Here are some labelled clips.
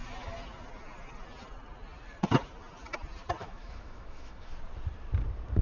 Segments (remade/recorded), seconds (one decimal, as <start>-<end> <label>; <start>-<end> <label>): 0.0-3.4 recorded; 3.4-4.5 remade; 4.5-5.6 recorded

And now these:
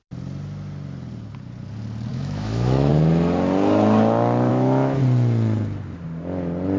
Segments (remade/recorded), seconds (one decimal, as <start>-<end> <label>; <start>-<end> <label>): 0.0-2.1 recorded; 2.1-2.9 remade; 2.9-4.5 recorded; 4.5-5.0 remade; 5.0-6.8 recorded

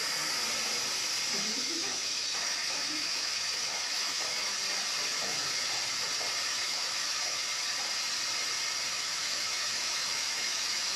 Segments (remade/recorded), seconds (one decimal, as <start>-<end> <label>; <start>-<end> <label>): 0.0-1.5 recorded; 1.5-4.5 remade; 4.5-5.1 recorded; 5.1-5.7 remade; 5.7-6.5 recorded; 6.5-7.4 remade; 7.4-8.9 recorded; 8.9-11.0 remade

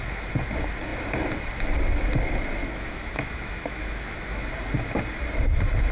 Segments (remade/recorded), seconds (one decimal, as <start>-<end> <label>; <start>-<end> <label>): 0.0-2.6 recorded; 2.6-4.4 remade; 4.4-5.9 recorded

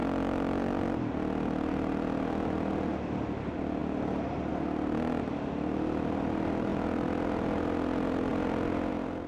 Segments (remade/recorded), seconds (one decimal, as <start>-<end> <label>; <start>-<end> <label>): 0.0-9.3 recorded

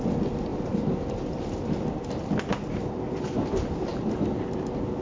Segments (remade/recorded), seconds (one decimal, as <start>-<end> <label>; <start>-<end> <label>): 0.0-5.0 recorded

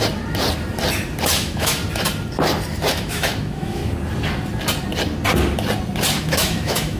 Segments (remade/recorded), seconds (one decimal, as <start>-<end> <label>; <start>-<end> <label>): 0.0-1.3 recorded; 1.3-1.8 remade; 1.8-2.9 recorded; 2.9-3.8 remade; 3.8-6.2 recorded; 6.2-7.0 remade